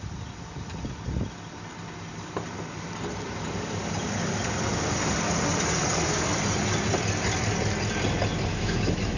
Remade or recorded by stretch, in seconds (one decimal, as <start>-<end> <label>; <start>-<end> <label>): 0.0-8.5 recorded; 8.5-9.2 remade